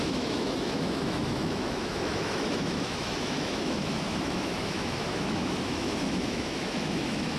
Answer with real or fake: fake